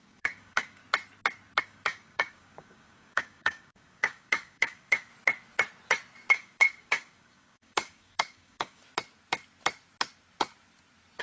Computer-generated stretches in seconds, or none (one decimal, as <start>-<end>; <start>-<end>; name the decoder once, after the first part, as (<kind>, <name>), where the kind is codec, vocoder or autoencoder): 0.0-0.8 (codec, DAC); 1.6-5.1; 6.3-8.8